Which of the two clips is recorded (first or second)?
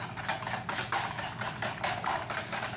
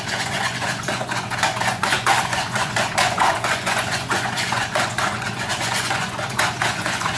first